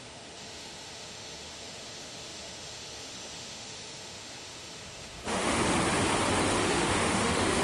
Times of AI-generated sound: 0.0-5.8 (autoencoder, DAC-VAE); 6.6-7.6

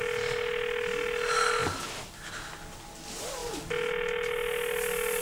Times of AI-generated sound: 1.6-2.3 (vocoder, BigVGAN v2)